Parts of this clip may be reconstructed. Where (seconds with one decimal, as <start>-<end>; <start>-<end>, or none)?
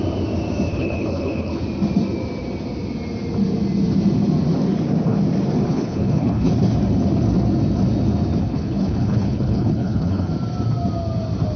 0.7-1.6; 5.7-6.5; 8.4-10.3